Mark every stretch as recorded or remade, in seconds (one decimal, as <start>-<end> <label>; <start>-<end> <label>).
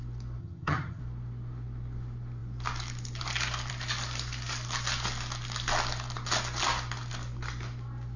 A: 0.0-0.4 recorded; 0.4-1.0 remade; 1.0-8.2 recorded